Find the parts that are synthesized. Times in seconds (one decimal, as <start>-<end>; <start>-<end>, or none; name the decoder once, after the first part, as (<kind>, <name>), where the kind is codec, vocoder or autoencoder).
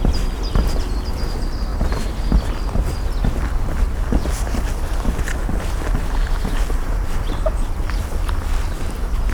none